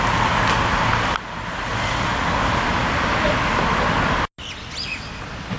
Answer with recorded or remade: recorded